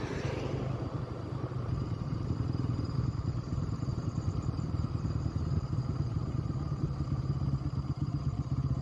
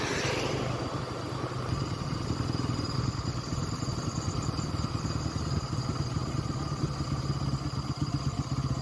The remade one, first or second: first